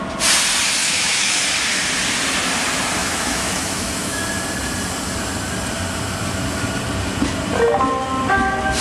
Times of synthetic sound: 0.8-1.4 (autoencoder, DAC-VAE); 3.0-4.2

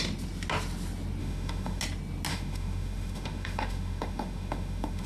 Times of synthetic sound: 1.2-1.8 (autoencoder, DAC-VAE); 2.3-5.1

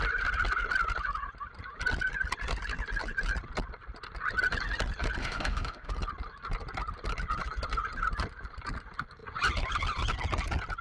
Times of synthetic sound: 5.2-5.9 (autoencoder, DAC-VAE)

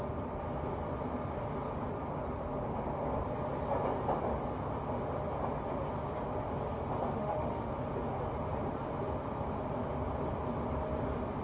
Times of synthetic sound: 7.2-7.7 (autoencoder, DAC-VAE)

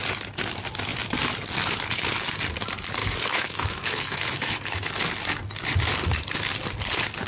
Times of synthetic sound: 3.0-4.9 (autoencoder, DAC-VAE)

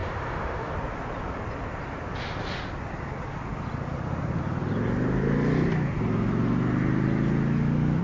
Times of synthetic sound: 0.0-0.7 (autoencoder, DAC-VAE)

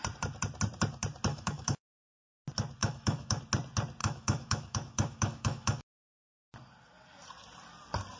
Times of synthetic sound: 1.3-2.2 (autoencoder, DAC-VAE); 2.8-3.4; 4.0-6.5